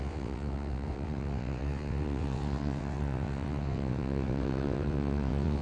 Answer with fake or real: fake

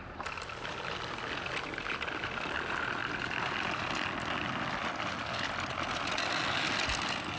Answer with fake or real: real